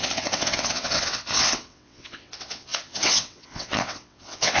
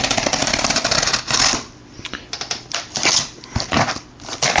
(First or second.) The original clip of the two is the second